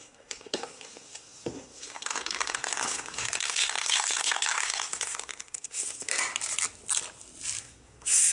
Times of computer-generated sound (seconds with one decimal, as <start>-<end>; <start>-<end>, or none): 0.0-6.1; 7.6-8.3